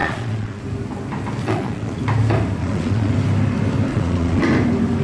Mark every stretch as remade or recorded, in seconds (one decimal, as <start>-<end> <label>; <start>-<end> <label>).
0.0-0.6 remade; 0.6-1.4 recorded; 1.4-2.0 remade; 2.0-2.6 recorded; 2.6-3.1 remade; 3.1-3.9 recorded; 3.9-4.4 remade; 4.4-5.0 recorded